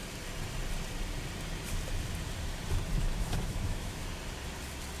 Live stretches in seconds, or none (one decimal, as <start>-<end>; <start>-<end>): 0.0-3.0; 4.0-5.0